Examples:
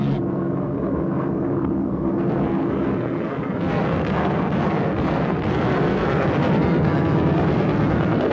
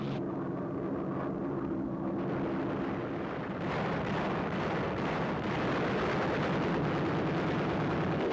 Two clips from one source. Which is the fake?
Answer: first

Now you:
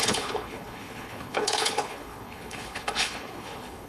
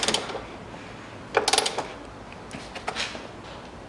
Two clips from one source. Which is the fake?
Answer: first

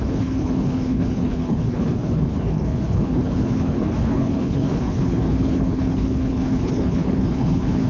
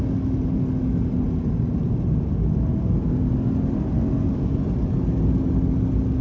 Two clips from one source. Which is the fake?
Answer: first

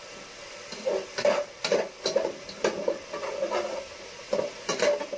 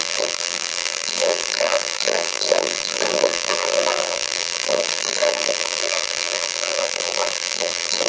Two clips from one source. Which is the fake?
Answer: second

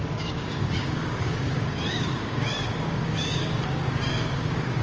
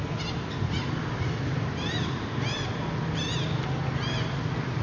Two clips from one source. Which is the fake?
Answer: first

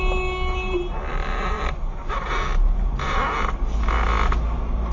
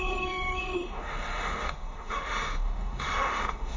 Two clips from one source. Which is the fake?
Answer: second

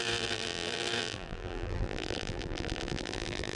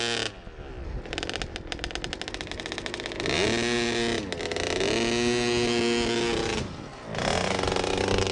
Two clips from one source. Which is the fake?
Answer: first